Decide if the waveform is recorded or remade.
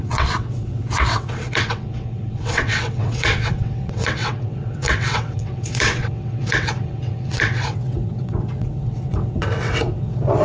remade